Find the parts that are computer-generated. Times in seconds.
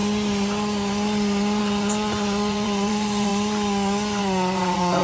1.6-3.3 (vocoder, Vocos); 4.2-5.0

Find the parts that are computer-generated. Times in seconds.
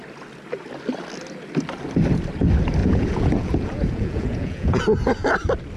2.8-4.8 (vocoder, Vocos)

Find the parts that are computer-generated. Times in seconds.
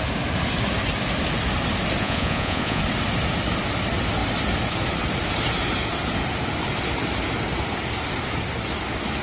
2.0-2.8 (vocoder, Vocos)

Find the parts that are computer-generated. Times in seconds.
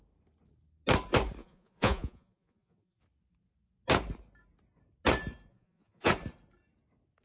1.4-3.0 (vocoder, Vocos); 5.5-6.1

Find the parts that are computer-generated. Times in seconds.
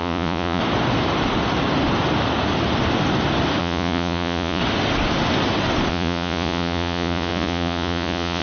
0.0-0.6 (vocoder, Vocos); 3.6-4.6; 5.9-8.4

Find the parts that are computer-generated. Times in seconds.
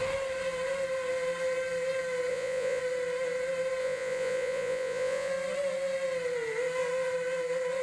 2.3-2.8 (vocoder, Vocos); 3.8-5.3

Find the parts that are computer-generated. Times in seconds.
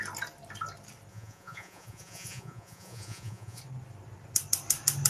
1.1-3.6 (vocoder, Vocos)